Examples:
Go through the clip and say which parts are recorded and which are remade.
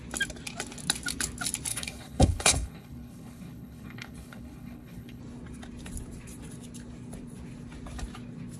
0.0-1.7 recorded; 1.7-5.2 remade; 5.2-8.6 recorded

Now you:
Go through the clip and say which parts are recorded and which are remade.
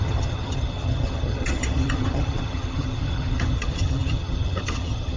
0.0-5.2 remade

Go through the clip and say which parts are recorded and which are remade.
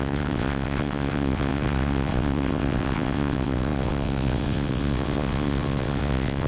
0.0-6.5 remade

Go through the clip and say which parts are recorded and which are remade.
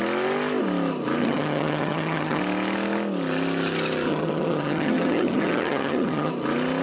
0.0-1.2 recorded; 1.2-2.4 remade; 2.4-4.1 recorded; 4.1-6.3 remade; 6.3-6.8 recorded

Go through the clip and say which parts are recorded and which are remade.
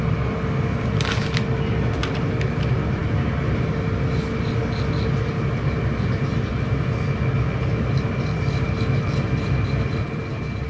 0.0-8.4 recorded; 8.4-10.2 remade; 10.2-10.7 recorded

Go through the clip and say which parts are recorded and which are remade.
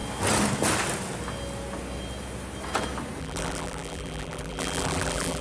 0.0-3.2 recorded; 3.2-5.4 remade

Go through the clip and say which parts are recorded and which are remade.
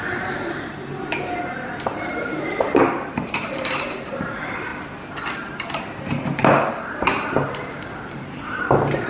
0.0-4.7 remade; 4.7-6.7 recorded; 6.7-9.1 remade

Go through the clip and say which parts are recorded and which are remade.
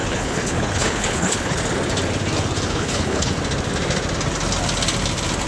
0.0-1.6 remade; 1.6-2.7 recorded; 2.7-3.3 remade; 3.3-5.5 recorded